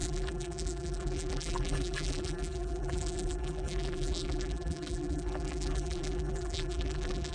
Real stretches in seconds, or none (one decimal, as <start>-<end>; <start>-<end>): none